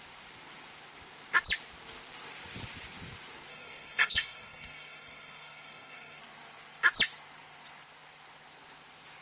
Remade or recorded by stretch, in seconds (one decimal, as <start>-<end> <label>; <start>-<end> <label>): 0.0-3.5 recorded; 3.5-6.2 remade; 6.2-9.2 recorded